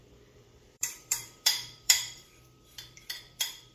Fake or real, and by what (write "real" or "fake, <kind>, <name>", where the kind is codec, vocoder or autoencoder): fake, vocoder, BigVGAN v2